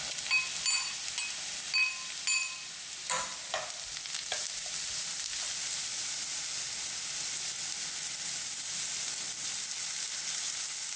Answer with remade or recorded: recorded